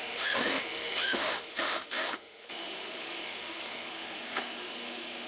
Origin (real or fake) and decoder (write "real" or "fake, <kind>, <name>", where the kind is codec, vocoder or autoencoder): fake, autoencoder, DAC-VAE